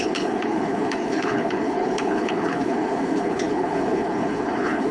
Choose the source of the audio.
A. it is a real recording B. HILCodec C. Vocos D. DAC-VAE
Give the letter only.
B